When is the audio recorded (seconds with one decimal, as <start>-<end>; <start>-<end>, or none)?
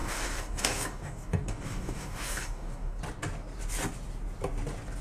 3.0-5.0